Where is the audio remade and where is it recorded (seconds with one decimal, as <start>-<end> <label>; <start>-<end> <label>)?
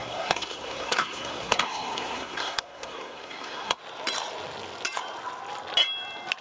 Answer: 0.0-3.8 remade; 3.8-6.4 recorded